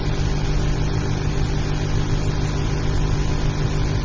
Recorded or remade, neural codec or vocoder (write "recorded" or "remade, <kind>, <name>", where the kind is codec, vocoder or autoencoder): recorded